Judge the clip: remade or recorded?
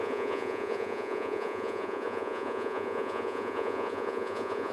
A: remade